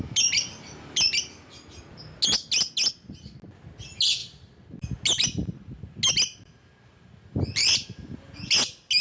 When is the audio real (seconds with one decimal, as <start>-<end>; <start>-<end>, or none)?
0.0-9.0